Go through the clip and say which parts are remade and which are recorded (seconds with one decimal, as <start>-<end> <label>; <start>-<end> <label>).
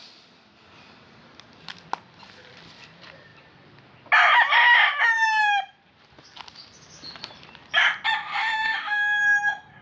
0.0-8.4 recorded; 8.4-9.2 remade; 9.2-9.8 recorded